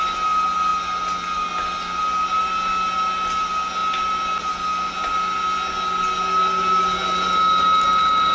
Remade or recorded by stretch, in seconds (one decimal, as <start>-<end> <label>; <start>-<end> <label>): 0.0-8.3 recorded